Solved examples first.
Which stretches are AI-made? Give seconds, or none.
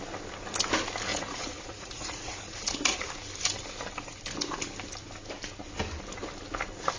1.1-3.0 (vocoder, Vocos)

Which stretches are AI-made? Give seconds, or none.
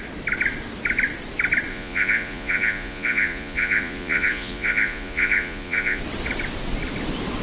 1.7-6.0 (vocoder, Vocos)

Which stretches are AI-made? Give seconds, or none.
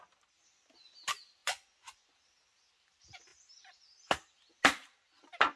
1.4-2.1 (vocoder, Vocos)